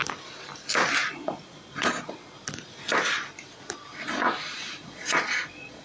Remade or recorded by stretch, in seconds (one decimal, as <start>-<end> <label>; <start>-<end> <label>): 0.0-1.0 recorded; 1.0-2.1 remade; 2.1-3.9 recorded; 3.9-5.8 remade